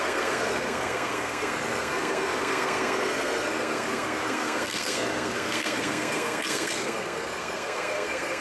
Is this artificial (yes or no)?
yes